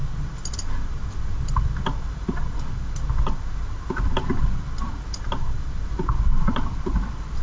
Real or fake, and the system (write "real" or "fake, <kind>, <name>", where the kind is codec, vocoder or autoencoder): real